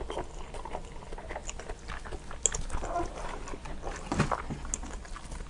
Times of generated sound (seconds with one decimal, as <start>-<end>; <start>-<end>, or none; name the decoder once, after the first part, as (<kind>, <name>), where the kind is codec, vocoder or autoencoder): none